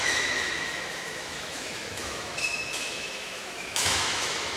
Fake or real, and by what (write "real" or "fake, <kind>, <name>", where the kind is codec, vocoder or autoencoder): fake, autoencoder, DAC-VAE